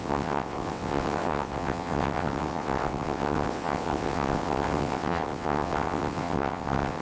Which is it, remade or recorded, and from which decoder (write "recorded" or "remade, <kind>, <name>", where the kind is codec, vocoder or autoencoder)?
remade, vocoder, WaveNeXt